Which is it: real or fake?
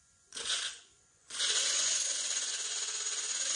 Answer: fake